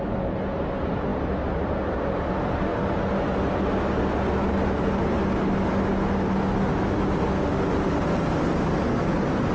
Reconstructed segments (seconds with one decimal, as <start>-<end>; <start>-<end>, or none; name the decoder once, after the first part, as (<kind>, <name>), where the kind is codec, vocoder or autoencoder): none

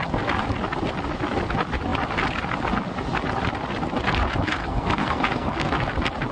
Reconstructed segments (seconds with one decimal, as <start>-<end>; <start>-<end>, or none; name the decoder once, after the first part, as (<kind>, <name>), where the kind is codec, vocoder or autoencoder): 4.6-5.7 (codec, SNAC)

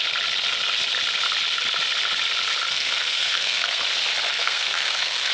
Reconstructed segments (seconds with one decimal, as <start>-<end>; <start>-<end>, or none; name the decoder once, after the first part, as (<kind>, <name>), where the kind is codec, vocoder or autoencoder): 2.7-3.8 (codec, SNAC); 4.3-5.3

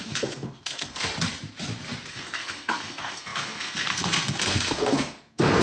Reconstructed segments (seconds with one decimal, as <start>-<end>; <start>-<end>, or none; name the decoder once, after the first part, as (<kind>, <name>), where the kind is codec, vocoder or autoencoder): 0.0-1.1 (codec, SNAC); 2.1-5.6

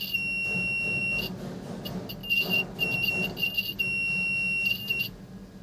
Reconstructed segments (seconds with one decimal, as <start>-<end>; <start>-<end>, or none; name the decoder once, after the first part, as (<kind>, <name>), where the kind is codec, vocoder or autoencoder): none

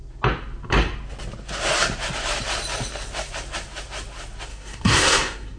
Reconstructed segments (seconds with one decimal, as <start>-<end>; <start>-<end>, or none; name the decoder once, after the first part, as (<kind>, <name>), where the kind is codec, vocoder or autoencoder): 4.5-5.6 (codec, SNAC)